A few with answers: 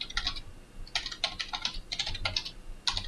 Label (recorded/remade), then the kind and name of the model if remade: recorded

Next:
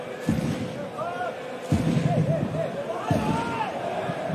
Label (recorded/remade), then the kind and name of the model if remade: recorded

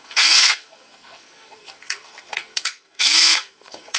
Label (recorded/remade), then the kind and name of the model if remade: remade, codec, SNAC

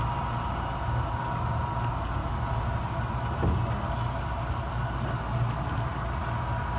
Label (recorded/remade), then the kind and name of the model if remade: recorded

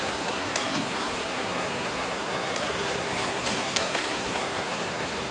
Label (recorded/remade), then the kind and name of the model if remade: remade, codec, SNAC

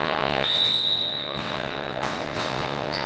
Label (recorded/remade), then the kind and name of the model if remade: remade, vocoder, WaveNeXt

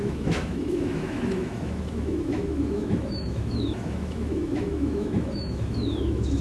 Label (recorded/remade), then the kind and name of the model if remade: remade, autoencoder, DAC-VAE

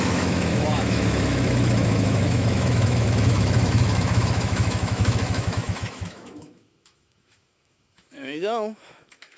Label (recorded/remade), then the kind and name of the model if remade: remade, autoencoder, DAC-VAE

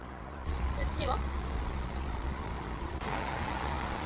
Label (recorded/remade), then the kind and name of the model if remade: remade, vocoder, Vocos